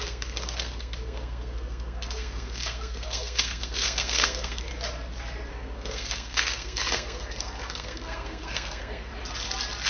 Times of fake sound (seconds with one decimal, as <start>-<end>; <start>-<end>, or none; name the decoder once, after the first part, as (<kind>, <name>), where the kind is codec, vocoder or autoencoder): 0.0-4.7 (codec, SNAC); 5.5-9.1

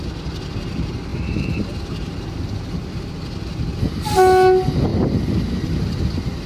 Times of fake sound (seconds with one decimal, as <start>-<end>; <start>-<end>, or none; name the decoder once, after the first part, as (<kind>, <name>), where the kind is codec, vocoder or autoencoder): 1.1-3.1 (vocoder, BigVGAN v2)

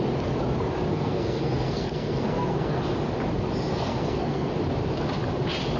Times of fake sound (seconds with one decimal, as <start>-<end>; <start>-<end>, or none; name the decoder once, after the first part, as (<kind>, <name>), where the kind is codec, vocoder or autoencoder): 0.9-2.8 (codec, SNAC); 3.7-4.5

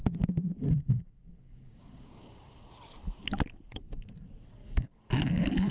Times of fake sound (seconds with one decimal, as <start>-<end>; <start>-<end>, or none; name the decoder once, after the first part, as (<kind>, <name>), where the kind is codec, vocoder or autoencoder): 0.0-2.5 (codec, DAC); 4.6-5.3

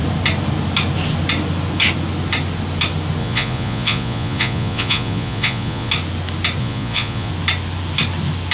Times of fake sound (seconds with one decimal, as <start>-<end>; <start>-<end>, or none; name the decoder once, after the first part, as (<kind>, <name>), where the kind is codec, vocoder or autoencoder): 3.2-5.9 (vocoder, Vocos); 6.6-7.3

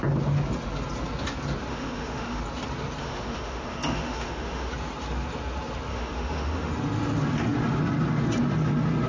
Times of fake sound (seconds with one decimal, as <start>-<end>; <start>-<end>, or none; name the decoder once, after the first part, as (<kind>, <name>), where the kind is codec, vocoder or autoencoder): 1.7-2.4 (autoencoder, DAC-VAE); 3.0-4.7; 5.9-6.7

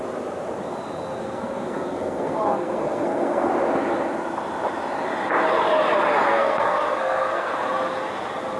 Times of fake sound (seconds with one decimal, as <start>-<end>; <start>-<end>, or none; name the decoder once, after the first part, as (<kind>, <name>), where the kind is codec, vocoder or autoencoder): 1.2-3.5 (codec, SNAC); 6.3-7.6

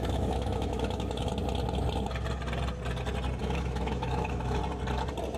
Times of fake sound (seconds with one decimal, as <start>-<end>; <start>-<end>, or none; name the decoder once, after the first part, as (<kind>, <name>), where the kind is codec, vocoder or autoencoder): 0.0-1.3 (autoencoder, DAC-VAE); 3.4-4.6